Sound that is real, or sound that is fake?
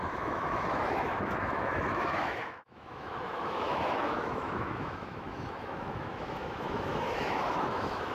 fake